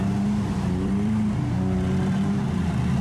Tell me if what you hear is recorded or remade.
remade